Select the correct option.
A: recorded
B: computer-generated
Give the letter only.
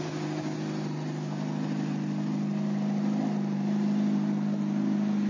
A